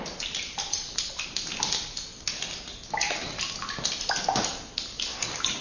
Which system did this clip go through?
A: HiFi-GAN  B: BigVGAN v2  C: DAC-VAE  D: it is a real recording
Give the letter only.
D